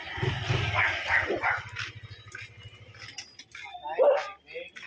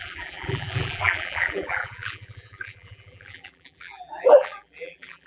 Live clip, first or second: first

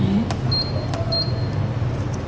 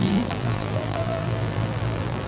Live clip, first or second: first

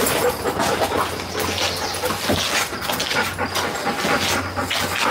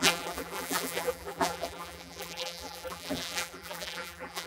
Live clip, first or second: first